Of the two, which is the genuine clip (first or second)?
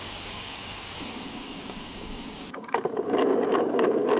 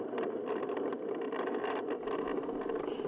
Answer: second